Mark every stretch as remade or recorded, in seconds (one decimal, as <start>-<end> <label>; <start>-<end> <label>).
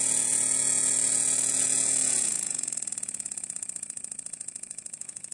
0.0-5.3 remade